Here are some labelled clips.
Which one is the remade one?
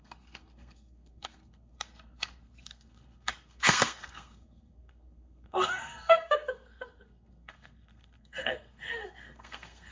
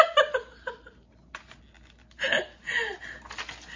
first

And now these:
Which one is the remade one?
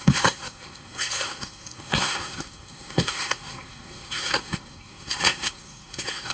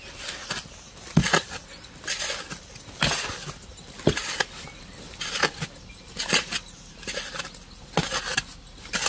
first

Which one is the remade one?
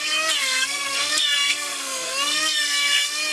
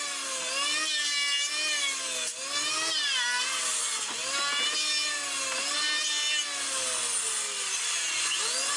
first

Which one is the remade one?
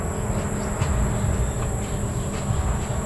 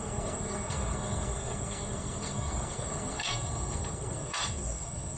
second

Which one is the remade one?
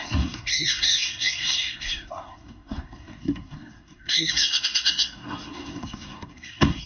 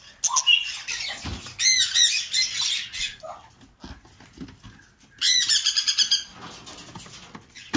first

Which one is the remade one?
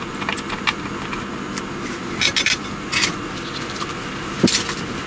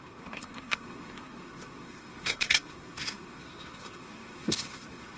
second